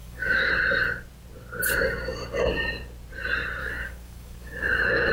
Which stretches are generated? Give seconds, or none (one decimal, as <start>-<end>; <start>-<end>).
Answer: 0.0-0.5; 3.6-5.1